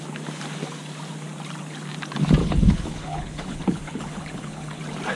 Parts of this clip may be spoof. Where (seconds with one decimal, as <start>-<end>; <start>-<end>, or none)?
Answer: 2.4-4.8